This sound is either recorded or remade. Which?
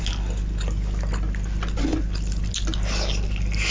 recorded